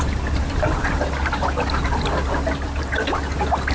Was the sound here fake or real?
real